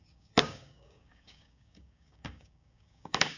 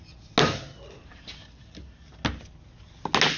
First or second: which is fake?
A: first